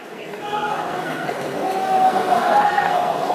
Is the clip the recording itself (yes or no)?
no